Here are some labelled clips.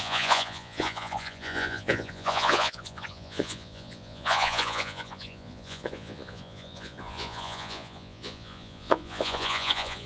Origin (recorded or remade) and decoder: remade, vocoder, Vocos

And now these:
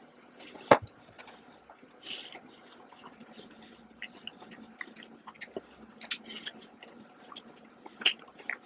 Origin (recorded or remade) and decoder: recorded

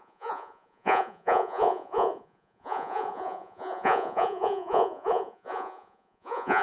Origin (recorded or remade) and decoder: remade, vocoder, Vocos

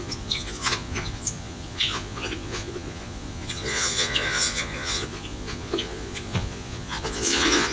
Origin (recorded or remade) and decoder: remade, vocoder, Vocos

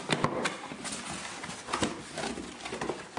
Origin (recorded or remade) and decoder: recorded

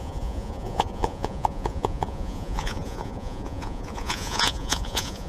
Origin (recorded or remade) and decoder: remade, vocoder, Vocos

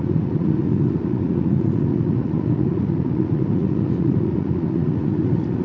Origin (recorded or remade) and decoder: remade, vocoder, Vocos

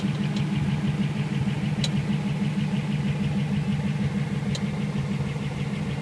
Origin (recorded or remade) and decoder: recorded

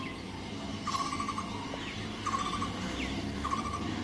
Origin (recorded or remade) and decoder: recorded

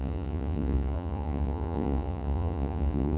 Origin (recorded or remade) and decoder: remade, vocoder, Vocos